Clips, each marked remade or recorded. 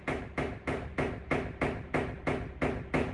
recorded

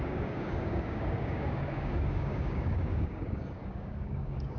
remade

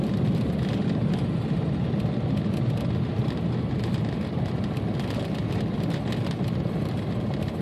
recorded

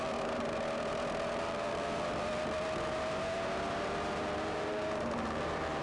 remade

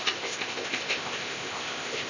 remade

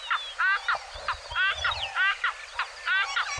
recorded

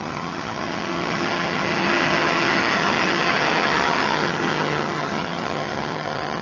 remade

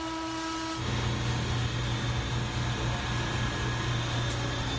recorded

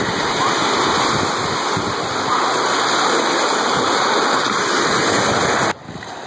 recorded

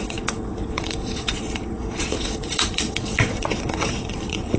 remade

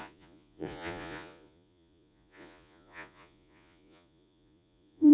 remade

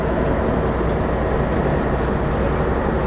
recorded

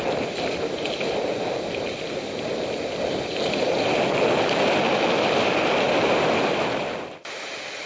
recorded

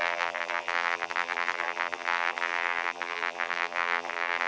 remade